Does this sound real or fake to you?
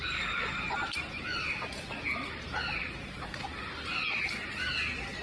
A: real